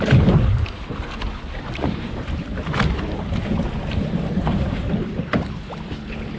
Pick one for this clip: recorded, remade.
remade